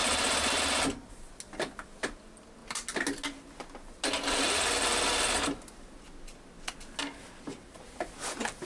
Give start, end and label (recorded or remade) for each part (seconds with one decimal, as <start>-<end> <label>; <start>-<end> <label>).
0.0-8.7 recorded